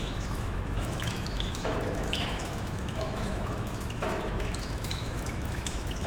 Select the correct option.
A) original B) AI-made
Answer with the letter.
B